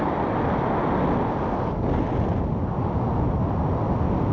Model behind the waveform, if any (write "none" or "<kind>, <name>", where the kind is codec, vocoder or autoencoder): none